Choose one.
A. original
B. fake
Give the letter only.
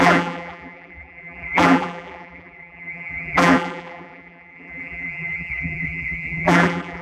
B